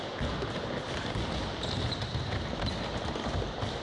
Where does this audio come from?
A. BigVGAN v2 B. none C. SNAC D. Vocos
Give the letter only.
B